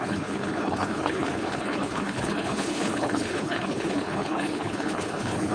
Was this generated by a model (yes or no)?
yes